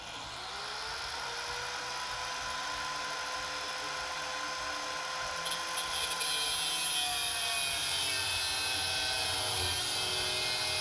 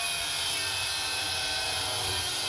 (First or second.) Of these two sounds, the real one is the first